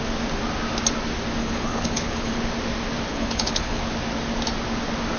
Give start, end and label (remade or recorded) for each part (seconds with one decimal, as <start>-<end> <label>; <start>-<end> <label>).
0.0-1.4 recorded; 1.4-2.4 remade; 2.4-3.1 recorded; 3.1-3.8 remade; 3.8-5.2 recorded